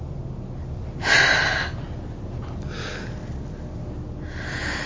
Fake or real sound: real